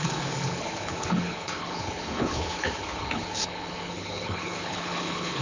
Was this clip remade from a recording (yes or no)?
yes